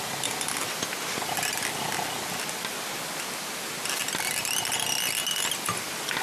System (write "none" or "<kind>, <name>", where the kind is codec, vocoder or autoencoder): none